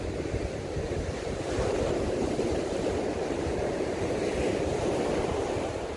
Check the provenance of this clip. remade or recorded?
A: remade